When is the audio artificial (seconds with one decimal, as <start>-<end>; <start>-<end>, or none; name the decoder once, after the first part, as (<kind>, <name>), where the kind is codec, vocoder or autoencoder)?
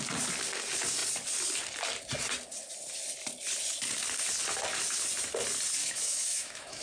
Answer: 5.8-6.8 (autoencoder, DAC-VAE)